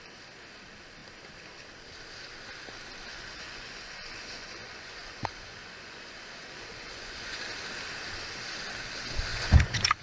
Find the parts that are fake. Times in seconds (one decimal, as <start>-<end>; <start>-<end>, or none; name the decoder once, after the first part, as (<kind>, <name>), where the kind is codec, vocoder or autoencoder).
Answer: 3.1-7.4 (vocoder, Vocos); 9.3-10.0